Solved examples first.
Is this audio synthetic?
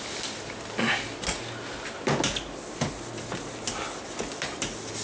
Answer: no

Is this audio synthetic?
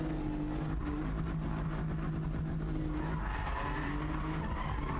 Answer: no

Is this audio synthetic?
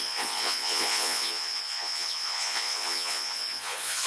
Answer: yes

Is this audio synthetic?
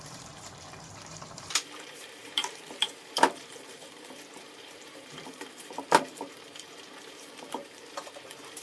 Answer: yes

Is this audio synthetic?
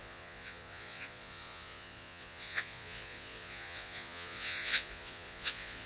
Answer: yes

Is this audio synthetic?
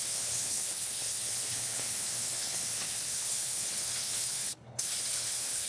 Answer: yes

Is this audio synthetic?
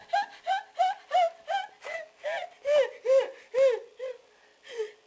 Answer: no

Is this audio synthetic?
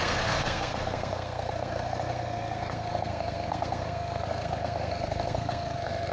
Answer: yes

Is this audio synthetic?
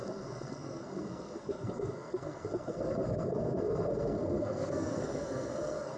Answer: yes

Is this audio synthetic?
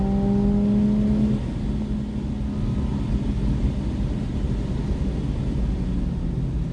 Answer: no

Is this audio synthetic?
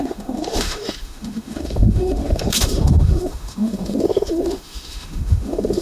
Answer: yes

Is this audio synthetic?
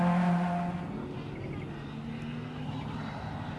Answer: no